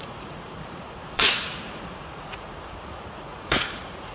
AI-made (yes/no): yes